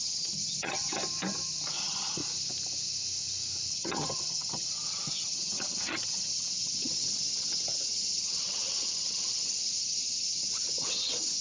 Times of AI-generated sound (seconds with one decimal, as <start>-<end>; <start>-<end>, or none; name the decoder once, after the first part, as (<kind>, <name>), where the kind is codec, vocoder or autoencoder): 0.0-1.0 (vocoder, HiFi-GAN); 1.7-2.2; 3.7-11.4